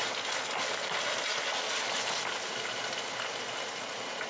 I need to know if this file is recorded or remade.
recorded